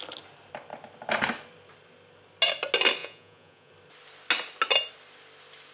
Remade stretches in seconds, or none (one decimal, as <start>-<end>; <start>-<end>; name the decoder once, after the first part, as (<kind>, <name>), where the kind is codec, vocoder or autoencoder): 3.0-3.7 (vocoder, Vocos)